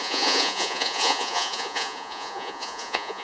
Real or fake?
fake